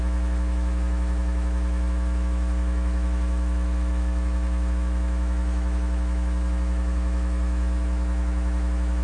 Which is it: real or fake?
fake